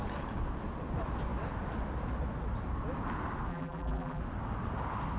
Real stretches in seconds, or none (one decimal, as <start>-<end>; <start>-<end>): 0.0-3.5; 4.2-5.2